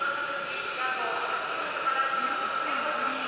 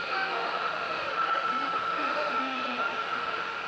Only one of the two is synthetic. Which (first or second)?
second